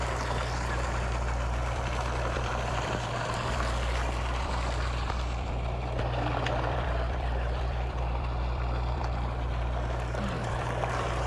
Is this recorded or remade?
remade